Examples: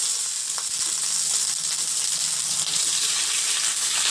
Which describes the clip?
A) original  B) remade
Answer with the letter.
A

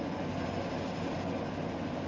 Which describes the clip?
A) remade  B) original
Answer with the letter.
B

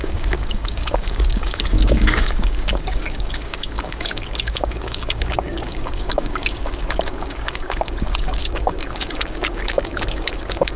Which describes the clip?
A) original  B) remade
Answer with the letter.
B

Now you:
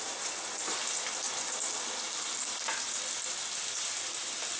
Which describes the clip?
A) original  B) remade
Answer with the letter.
A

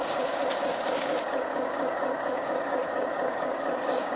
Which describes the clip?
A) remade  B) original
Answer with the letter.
A